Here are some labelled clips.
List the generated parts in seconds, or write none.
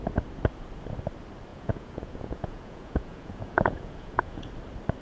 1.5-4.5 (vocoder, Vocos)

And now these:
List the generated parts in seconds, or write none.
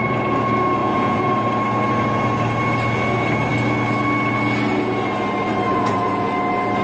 0.8-1.3 (vocoder, Vocos); 5.7-6.3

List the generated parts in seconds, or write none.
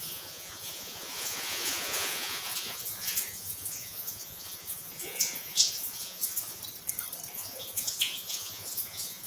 0.0-6.6 (vocoder, Vocos); 7.3-9.3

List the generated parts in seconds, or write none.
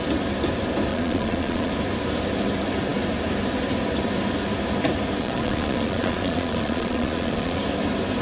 0.9-1.7 (vocoder, Vocos); 5.2-7.6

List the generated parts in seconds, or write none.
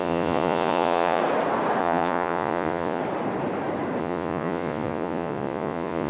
0.0-1.2 (vocoder, Vocos); 1.8-3.0; 4.0-6.1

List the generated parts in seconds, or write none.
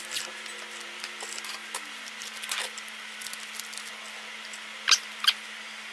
none